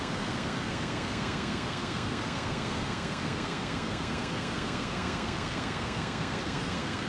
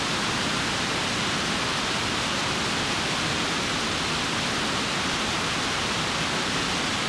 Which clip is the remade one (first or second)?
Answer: first